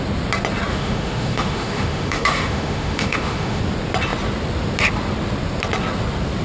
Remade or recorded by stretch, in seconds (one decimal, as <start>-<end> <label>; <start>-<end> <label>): 0.0-0.7 recorded; 0.7-3.6 remade; 3.6-6.4 recorded